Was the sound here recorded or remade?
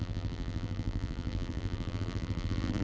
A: remade